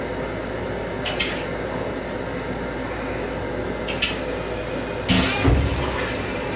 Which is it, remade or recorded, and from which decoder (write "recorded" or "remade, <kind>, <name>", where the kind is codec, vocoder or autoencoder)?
recorded